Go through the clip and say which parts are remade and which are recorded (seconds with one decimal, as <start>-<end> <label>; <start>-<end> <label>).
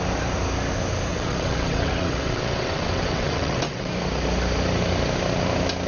0.0-1.1 recorded; 1.1-3.9 remade; 3.9-5.9 recorded